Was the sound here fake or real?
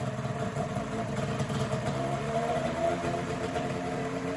fake